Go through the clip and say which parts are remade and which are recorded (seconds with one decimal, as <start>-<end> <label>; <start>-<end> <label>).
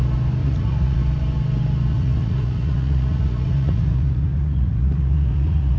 0.0-0.4 recorded; 0.4-1.0 remade; 1.0-1.9 recorded; 1.9-5.8 remade